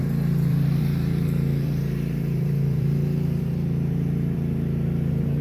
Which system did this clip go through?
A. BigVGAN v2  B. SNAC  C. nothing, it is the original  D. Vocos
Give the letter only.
A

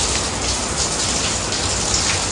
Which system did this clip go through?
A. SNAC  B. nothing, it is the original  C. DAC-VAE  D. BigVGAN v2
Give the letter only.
B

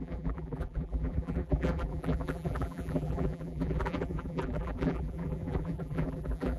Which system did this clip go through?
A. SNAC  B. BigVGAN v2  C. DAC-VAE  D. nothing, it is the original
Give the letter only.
B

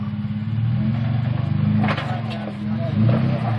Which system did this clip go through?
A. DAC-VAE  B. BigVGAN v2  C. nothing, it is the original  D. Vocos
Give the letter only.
C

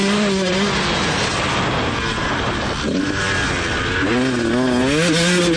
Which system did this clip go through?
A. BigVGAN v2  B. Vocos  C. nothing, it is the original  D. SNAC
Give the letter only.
C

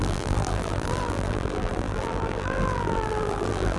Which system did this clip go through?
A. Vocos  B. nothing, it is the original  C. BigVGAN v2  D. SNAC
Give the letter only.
C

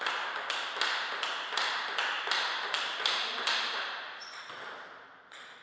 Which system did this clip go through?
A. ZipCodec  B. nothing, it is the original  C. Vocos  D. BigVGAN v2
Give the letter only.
D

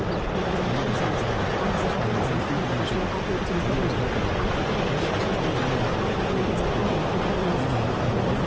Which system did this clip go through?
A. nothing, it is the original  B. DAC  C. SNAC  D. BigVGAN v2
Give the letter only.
A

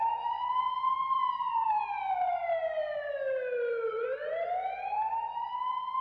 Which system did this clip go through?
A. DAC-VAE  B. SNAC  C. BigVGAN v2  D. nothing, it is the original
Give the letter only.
C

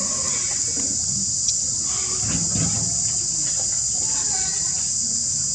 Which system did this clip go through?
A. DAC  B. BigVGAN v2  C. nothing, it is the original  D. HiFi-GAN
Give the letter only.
C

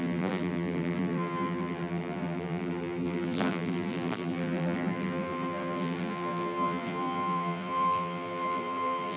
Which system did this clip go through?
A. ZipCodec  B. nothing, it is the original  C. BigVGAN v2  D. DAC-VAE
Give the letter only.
C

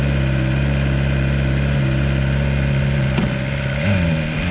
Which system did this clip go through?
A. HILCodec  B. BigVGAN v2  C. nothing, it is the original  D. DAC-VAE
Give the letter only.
C